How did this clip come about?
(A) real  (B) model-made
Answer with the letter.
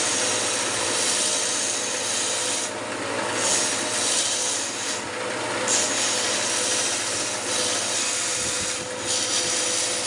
A